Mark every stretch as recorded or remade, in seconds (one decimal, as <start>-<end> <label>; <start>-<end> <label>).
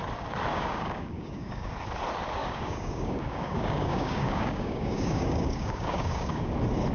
0.0-0.5 recorded; 0.5-1.7 remade; 1.7-2.4 recorded; 2.4-6.5 remade; 6.5-6.9 recorded